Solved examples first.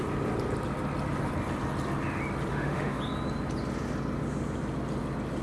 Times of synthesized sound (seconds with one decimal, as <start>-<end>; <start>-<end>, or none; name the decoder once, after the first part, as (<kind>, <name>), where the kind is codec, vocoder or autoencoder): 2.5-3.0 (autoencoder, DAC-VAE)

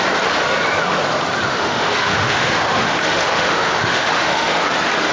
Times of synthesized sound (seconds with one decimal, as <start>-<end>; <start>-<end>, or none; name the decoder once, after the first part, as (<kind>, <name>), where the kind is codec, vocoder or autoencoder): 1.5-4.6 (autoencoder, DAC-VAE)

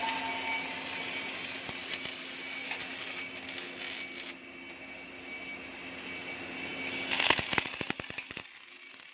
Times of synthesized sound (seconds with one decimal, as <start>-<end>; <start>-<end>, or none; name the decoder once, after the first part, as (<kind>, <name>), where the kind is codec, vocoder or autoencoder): none

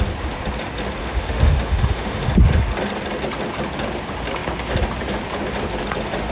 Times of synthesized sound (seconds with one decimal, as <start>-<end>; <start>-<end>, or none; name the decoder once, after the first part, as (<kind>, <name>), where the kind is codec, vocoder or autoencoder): 1.0-2.3 (autoencoder, DAC-VAE)